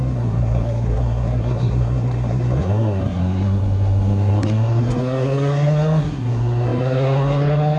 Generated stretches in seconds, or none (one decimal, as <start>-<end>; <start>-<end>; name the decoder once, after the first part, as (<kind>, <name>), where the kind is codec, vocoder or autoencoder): 0.0-7.8 (codec, SNAC)

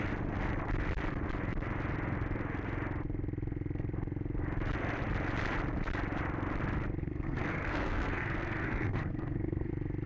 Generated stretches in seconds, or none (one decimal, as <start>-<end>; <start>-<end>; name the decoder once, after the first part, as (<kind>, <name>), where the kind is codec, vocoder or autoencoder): 7.0-9.7 (codec, SNAC)